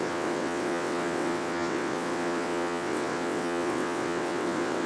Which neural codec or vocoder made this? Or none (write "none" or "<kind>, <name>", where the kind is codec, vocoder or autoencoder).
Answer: vocoder, WaveNeXt